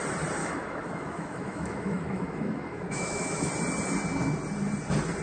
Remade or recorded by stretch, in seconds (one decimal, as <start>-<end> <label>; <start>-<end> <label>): 0.0-0.4 recorded; 0.4-3.5 remade; 3.5-5.2 recorded